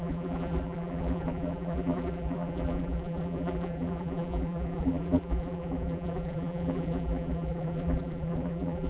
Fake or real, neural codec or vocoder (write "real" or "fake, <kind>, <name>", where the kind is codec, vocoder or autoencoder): fake, vocoder, BigVGAN v2